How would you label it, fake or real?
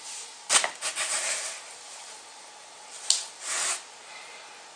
real